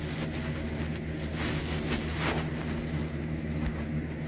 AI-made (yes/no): no